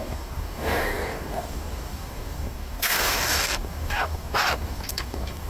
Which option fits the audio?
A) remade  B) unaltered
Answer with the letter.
A